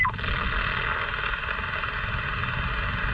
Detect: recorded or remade recorded